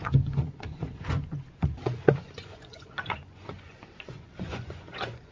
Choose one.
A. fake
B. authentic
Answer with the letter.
A